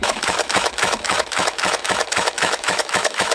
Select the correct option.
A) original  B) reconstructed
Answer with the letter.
B